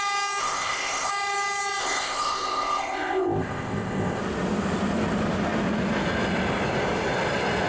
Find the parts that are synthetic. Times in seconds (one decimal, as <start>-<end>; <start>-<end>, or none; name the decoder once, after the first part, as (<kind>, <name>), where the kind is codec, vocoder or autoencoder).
0.4-1.1 (codec, ZipCodec); 1.8-4.2